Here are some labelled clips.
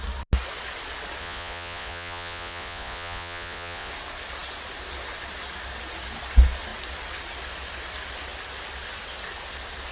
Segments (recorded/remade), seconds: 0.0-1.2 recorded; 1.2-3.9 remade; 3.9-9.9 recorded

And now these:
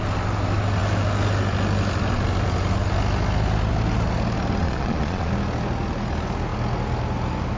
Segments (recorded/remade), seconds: 0.0-4.6 recorded; 4.6-5.3 remade; 5.3-7.6 recorded